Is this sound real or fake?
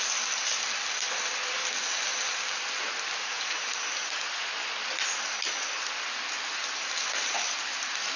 real